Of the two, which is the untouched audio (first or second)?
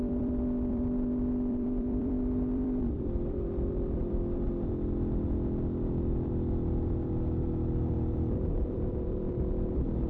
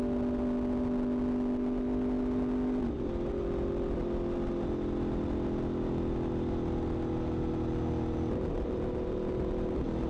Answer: second